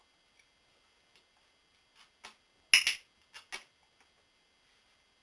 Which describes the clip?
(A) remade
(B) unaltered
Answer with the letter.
B